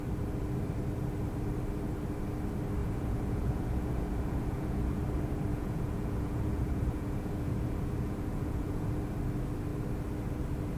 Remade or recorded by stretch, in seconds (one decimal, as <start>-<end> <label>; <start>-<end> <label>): 0.0-2.8 recorded; 2.8-5.0 remade; 5.0-5.5 recorded; 5.5-9.0 remade; 9.0-10.8 recorded